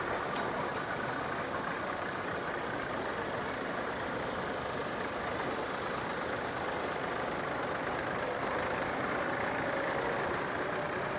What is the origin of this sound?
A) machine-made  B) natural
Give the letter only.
B